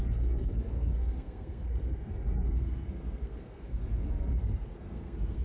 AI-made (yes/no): yes